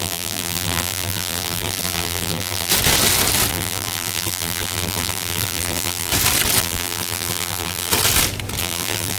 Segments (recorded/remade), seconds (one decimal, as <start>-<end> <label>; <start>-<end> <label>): 0.0-2.7 remade; 2.7-3.5 recorded; 3.5-6.1 remade; 6.1-6.6 recorded; 6.6-7.9 remade; 7.9-8.6 recorded; 8.6-9.2 remade